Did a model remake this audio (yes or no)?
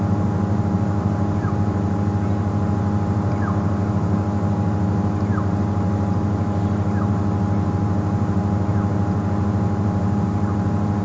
no